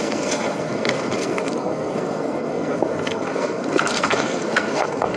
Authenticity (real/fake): fake